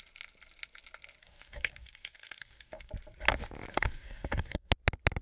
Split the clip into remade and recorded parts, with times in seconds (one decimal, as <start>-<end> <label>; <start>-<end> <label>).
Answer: 0.0-1.2 recorded; 1.2-2.9 remade; 2.9-3.7 recorded; 3.7-4.7 remade; 4.7-5.2 recorded